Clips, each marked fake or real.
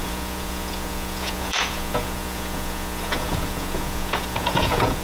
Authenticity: fake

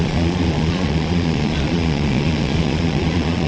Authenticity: fake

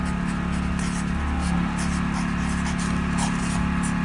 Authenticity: real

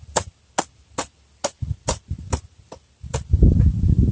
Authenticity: real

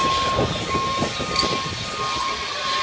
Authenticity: real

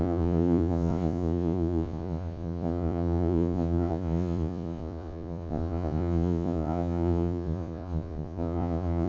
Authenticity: fake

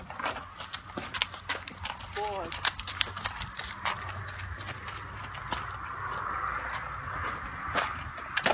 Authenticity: real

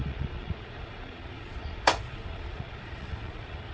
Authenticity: fake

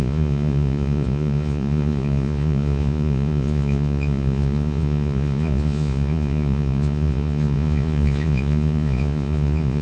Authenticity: fake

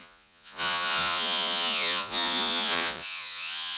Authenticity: fake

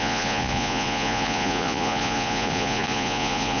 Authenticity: fake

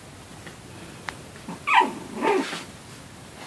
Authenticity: real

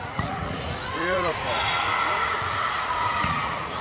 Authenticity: fake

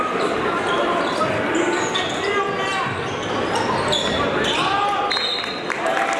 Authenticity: real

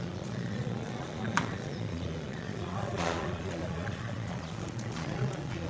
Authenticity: fake